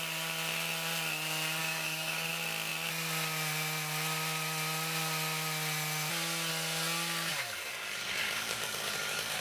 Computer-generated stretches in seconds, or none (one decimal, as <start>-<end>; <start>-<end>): 1.6-2.3; 7.3-9.4